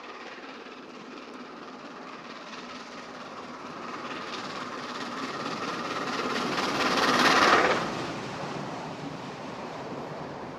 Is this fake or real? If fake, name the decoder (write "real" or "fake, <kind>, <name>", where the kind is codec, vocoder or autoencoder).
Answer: fake, vocoder, BigVGAN v2